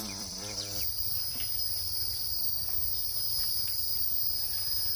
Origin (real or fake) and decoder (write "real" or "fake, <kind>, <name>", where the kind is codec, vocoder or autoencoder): fake, vocoder, BigVGAN v2